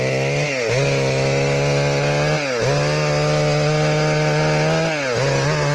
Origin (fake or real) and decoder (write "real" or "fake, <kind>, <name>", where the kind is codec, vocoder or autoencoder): real